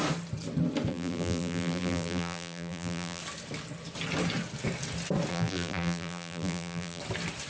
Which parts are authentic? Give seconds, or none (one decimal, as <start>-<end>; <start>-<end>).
0.0-0.9; 3.2-5.3; 7.0-7.5